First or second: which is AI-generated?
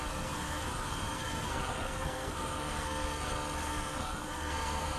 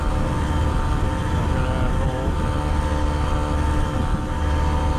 first